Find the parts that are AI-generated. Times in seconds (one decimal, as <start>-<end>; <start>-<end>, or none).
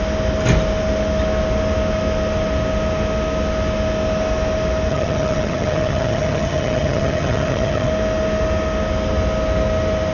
4.9-7.9